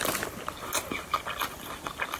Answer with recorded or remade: recorded